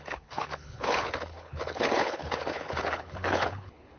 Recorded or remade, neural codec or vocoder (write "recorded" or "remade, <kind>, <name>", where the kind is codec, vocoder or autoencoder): remade, codec, HILCodec